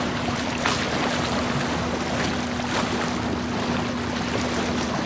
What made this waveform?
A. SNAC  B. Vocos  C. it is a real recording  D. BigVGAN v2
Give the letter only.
C